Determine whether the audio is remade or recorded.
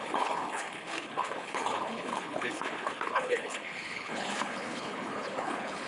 remade